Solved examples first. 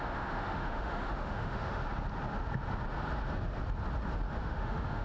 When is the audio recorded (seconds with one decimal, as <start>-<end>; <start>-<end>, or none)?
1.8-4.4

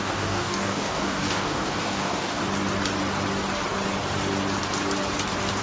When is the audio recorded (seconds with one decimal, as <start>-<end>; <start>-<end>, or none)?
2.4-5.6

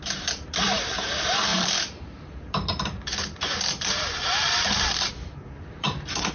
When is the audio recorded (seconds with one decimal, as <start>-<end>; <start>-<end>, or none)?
none

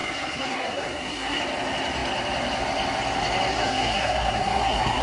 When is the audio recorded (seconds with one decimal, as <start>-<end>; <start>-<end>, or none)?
1.4-3.5